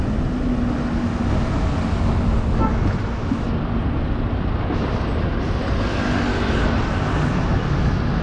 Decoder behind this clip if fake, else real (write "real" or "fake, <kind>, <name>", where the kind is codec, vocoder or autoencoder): real